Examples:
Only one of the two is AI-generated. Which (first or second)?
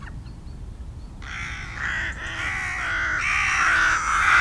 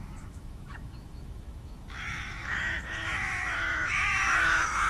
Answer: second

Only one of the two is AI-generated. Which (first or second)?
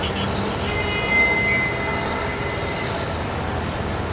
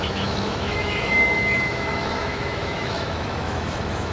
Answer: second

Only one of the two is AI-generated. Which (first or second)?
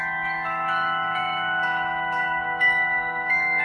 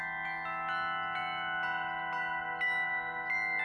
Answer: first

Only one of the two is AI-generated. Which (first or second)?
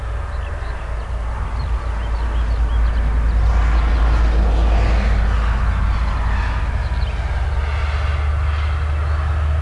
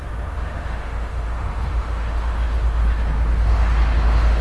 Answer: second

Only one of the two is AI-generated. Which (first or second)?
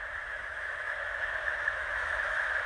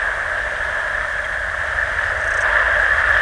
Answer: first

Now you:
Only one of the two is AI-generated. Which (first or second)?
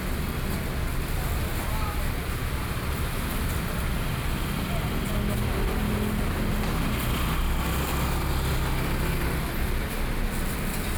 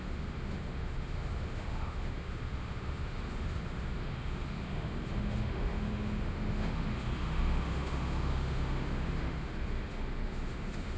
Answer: second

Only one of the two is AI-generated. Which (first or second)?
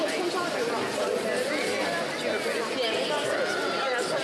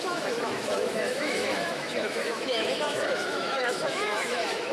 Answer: second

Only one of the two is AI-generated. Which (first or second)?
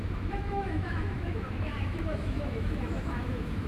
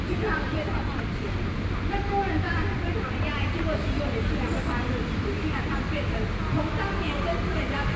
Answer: first